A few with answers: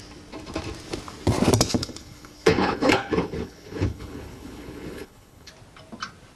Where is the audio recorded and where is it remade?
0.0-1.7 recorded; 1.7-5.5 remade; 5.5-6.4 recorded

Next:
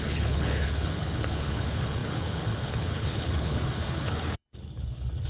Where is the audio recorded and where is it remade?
0.0-5.3 remade

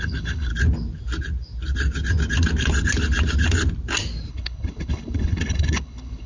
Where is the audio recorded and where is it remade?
0.0-0.5 remade; 0.5-4.3 recorded; 4.3-6.3 remade

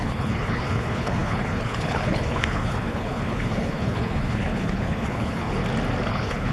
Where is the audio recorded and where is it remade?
0.0-5.6 remade; 5.6-6.1 recorded; 6.1-6.5 remade

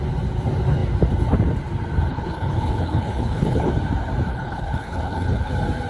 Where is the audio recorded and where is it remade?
0.0-2.1 recorded; 2.1-3.7 remade; 3.7-4.3 recorded; 4.3-5.5 remade; 5.5-5.9 recorded